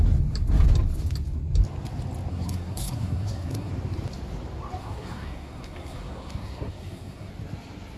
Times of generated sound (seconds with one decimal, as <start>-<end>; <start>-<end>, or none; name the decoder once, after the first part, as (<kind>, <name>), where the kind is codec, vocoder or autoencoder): 2.3-3.7 (codec, SNAC); 4.8-7.3